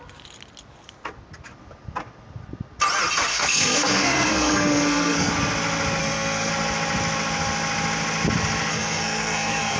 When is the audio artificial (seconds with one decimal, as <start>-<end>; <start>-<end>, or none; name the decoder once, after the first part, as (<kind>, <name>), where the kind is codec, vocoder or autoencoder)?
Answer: 3.3-5.3 (codec, SNAC); 6.0-6.5; 8.7-9.8